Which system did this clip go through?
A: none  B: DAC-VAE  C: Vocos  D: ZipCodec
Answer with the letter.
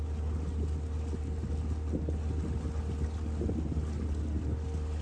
A